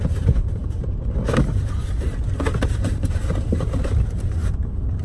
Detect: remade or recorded remade